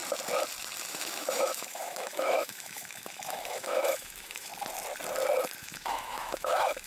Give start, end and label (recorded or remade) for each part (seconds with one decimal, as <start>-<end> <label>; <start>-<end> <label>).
0.0-0.9 recorded; 0.9-4.5 remade; 4.5-5.6 recorded; 5.6-6.9 remade